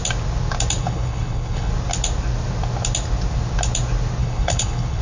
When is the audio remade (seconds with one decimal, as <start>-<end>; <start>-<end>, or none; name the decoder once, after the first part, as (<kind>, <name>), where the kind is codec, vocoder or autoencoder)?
0.8-1.7 (codec, HILCodec); 4.2-5.0